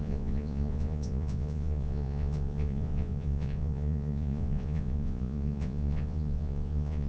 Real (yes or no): no